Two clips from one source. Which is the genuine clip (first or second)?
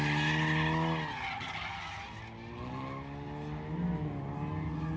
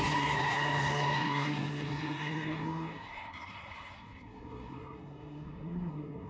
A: first